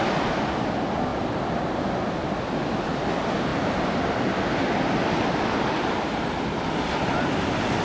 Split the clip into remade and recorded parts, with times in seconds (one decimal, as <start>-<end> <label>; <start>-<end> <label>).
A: 0.0-7.8 recorded